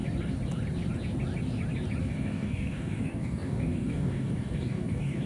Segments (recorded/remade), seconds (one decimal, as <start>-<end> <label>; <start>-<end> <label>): 0.0-2.0 recorded; 2.0-5.3 remade

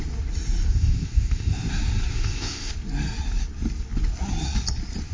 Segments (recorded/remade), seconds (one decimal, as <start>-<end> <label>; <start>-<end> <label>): 0.0-0.7 recorded; 0.7-1.7 remade; 1.7-2.1 recorded; 2.1-2.7 remade; 2.7-5.1 recorded

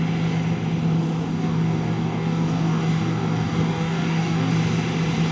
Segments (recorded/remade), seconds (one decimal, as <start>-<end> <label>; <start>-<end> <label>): 0.0-1.3 recorded; 1.3-4.5 remade; 4.5-5.3 recorded